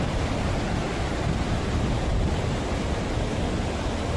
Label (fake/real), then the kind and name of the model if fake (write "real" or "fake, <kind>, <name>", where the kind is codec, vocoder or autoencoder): real